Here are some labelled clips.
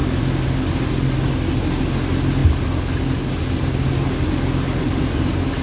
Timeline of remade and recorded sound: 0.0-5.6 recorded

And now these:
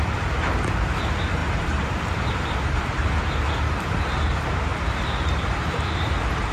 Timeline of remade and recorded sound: 0.0-1.4 recorded; 1.4-3.2 remade; 3.2-4.7 recorded; 4.7-6.5 remade

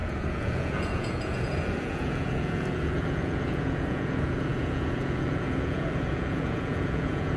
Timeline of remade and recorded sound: 0.0-7.4 remade

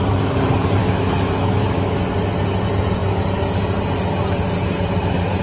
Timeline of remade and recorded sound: 0.0-0.8 recorded; 0.8-1.9 remade; 1.9-5.4 recorded